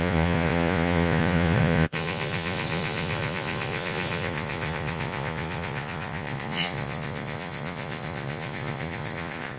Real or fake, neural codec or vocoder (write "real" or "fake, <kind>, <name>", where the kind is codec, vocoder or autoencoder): fake, vocoder, Vocos